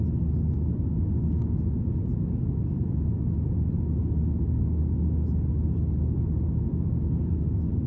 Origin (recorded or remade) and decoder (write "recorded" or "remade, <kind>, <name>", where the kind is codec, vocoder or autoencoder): recorded